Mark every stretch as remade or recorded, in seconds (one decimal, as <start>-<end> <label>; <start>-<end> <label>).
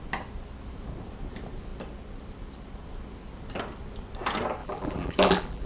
0.0-4.6 recorded; 4.6-5.7 remade